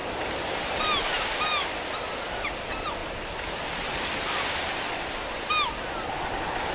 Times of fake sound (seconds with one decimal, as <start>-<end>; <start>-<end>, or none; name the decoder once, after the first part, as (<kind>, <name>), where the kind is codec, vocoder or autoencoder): 0.0-0.8 (vocoder, BigVGAN v2)